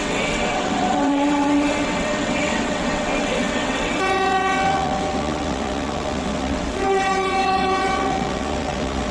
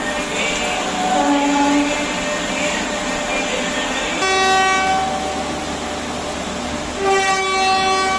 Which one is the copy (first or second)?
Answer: first